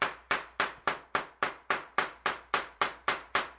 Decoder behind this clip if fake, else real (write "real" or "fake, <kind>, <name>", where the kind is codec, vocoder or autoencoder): fake, vocoder, BigVGAN v2